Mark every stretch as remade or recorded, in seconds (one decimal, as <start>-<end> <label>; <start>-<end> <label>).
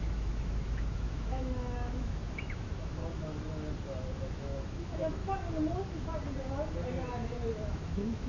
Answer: 0.0-3.0 remade; 3.0-4.1 recorded; 4.1-5.2 remade; 5.2-7.5 recorded; 7.5-8.3 remade